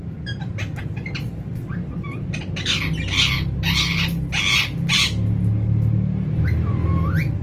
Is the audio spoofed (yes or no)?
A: no